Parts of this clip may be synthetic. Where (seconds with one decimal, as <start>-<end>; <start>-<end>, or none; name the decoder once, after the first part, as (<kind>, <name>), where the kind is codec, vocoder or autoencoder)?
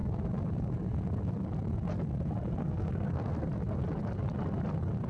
2.6-3.3 (codec, SNAC)